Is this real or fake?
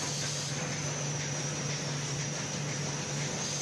real